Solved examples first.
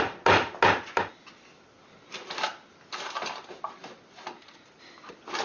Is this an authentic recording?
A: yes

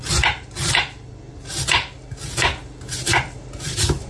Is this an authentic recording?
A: yes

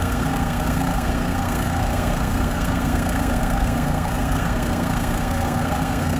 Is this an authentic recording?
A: no